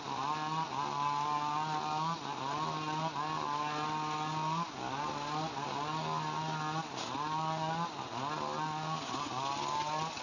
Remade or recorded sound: recorded